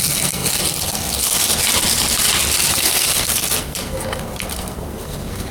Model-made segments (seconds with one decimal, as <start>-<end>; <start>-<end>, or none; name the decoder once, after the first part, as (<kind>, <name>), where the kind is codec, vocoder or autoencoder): 0.0-1.6 (codec, SNAC); 2.7-5.5